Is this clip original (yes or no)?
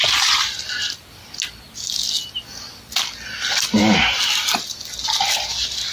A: yes